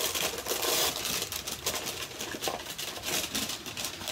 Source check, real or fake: real